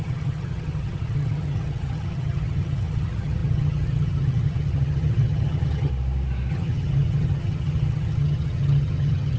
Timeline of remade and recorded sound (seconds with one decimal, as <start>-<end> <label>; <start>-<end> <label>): 0.0-5.9 remade; 5.9-6.5 recorded; 6.5-9.4 remade